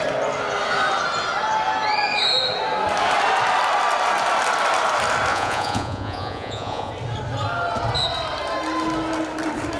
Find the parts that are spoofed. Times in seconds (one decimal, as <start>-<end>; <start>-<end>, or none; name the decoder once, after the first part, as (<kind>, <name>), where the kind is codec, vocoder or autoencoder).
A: 5.3-6.9 (vocoder, Vocos)

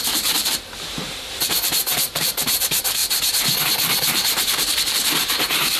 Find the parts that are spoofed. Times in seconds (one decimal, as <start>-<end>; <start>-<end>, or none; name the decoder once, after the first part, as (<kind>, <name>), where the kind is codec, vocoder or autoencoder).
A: 0.0-3.0 (vocoder, BigVGAN v2); 3.6-5.8

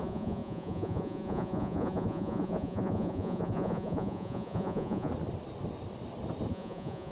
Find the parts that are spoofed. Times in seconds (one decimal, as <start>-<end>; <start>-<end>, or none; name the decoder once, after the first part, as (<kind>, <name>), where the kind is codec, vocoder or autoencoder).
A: 0.0-5.1 (vocoder, Vocos); 6.5-7.1

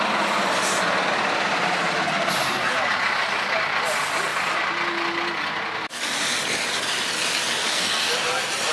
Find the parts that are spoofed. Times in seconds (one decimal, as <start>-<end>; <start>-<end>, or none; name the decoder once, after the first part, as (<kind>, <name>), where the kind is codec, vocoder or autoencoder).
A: 7.6-8.1 (codec, SNAC)

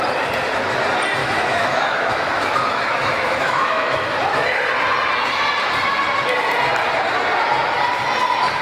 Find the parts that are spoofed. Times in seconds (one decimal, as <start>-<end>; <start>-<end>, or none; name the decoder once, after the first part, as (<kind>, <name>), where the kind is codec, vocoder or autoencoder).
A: 1.2-4.2 (autoencoder, DAC-VAE)

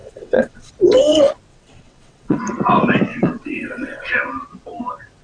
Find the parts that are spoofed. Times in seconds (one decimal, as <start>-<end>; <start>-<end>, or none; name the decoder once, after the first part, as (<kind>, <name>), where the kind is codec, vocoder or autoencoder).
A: 0.0-0.7 (vocoder, WaveNeXt); 1.5-2.4; 3.1-4.1

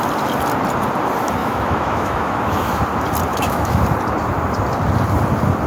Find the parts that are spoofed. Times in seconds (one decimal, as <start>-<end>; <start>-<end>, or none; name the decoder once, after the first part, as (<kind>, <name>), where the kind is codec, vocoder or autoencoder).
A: 1.4-2.8 (autoencoder, DAC-VAE); 3.3-3.8

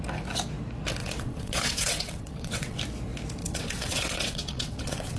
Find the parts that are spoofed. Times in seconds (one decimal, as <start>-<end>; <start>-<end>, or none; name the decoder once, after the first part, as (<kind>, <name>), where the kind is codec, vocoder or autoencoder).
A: 1.0-2.8 (vocoder, WaveNeXt); 3.4-5.2